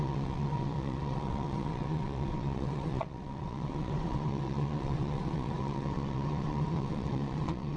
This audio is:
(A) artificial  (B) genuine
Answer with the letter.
A